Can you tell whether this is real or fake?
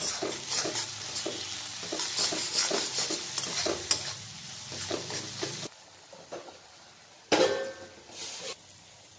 real